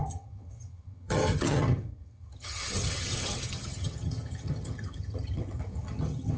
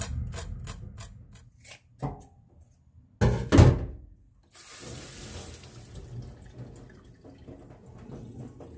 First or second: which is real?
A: second